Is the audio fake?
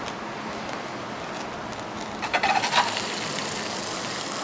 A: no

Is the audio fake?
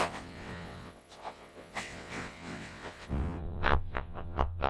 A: yes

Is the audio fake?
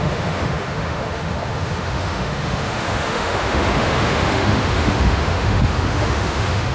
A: yes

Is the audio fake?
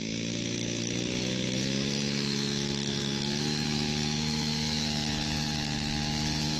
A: yes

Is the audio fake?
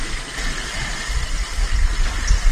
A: no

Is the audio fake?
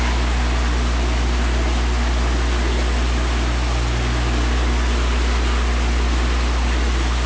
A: no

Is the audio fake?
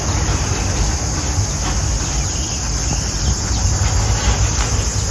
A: no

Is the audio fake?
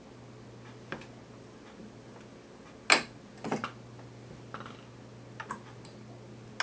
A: no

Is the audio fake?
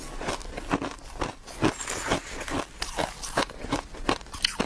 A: no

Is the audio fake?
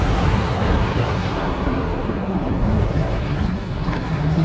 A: yes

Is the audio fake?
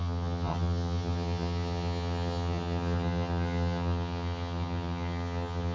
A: yes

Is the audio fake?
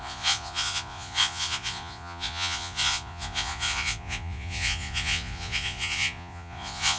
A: yes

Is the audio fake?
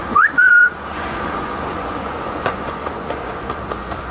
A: yes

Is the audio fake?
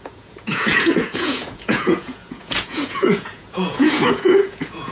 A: yes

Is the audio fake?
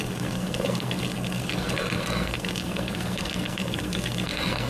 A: yes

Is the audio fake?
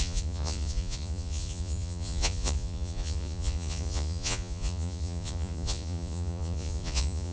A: yes